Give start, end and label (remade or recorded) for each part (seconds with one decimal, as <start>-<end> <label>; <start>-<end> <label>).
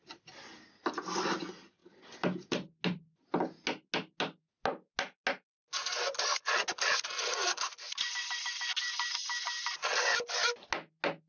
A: 0.0-11.3 recorded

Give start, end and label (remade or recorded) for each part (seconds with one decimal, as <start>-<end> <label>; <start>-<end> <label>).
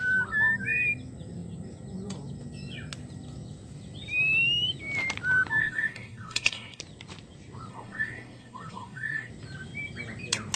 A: 0.0-5.6 recorded; 5.6-6.8 remade; 6.8-7.7 recorded; 7.7-9.3 remade; 9.3-10.6 recorded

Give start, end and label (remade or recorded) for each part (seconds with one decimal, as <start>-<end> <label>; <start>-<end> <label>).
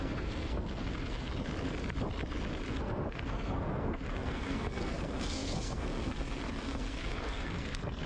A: 0.0-1.3 remade; 1.3-2.7 recorded; 2.7-8.1 remade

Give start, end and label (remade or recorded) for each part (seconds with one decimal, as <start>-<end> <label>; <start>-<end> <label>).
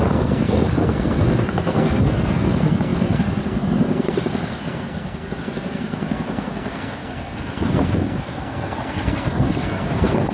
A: 0.0-10.3 remade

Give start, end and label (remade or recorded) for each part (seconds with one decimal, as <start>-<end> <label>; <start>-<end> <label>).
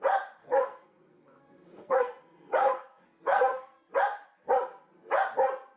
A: 0.0-0.4 recorded; 0.4-3.9 remade; 3.9-5.8 recorded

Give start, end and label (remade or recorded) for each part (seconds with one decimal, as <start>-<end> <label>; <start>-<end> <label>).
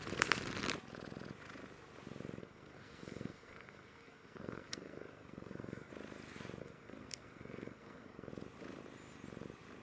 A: 0.0-2.4 recorded; 2.4-5.9 remade; 5.9-6.6 recorded; 6.6-8.3 remade; 8.3-9.8 recorded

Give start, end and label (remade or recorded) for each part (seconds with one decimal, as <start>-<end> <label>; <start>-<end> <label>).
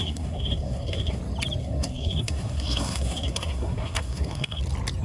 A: 0.0-1.2 remade; 1.2-1.6 recorded; 1.6-4.6 remade; 4.6-5.0 recorded